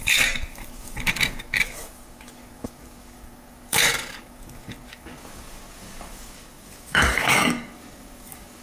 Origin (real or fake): fake